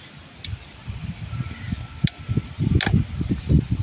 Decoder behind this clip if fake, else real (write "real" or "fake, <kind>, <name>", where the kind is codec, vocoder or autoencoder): real